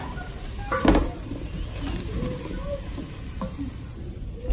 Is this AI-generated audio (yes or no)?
yes